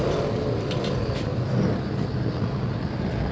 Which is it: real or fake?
real